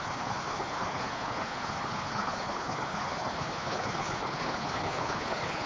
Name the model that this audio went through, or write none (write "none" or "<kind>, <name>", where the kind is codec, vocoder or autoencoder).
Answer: codec, HILCodec